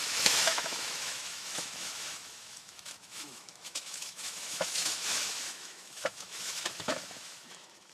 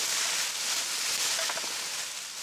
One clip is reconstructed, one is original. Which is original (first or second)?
second